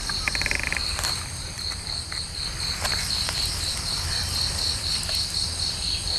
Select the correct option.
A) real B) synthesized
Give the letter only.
A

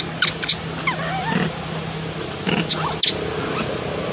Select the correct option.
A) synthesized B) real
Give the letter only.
B